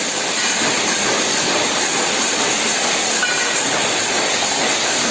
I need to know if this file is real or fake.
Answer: real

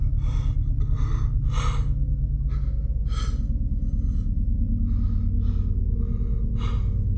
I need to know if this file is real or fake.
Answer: real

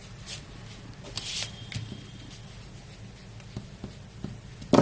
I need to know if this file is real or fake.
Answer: real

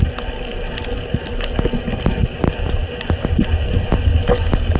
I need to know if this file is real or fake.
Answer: real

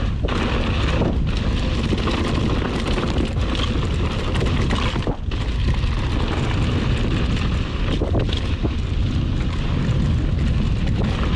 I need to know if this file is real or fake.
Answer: real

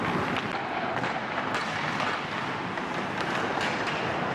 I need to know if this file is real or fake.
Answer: real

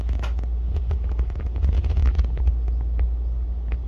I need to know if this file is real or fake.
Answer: real